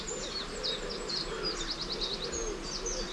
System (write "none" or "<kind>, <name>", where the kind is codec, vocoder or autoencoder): none